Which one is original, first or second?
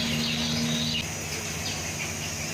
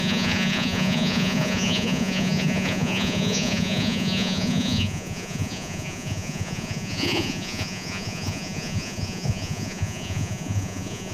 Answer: first